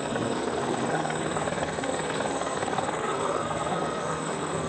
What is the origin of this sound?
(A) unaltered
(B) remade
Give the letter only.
B